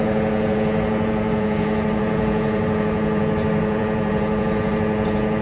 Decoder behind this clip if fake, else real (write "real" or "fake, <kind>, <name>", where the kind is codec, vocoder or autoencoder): fake, vocoder, Vocos